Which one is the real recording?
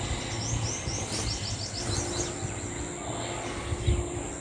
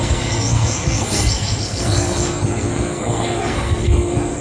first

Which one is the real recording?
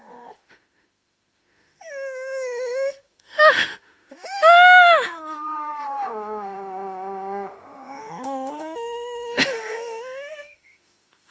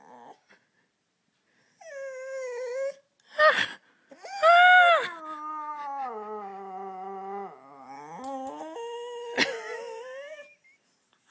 second